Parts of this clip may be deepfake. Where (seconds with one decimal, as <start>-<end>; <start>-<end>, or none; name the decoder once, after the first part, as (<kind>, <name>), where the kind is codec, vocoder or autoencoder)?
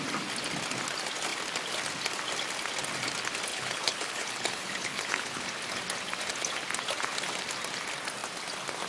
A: 3.5-5.4 (codec, HILCodec)